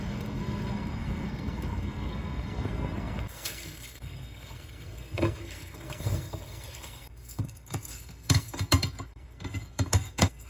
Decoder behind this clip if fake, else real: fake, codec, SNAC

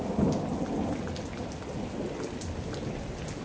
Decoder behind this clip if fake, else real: real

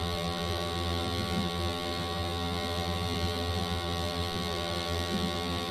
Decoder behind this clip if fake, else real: fake, vocoder, BigVGAN v2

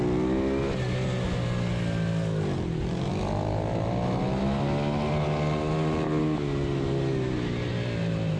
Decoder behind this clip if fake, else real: real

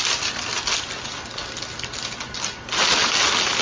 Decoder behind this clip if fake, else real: real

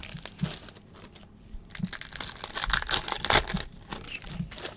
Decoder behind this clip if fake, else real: real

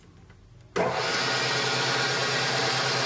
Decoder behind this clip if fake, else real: real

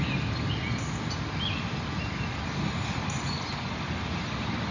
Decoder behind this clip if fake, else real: real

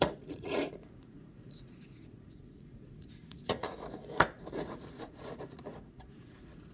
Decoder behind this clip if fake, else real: fake, vocoder, Vocos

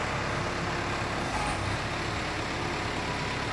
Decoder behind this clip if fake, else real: real